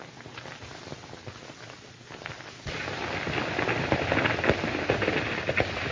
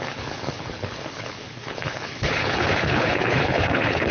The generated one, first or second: second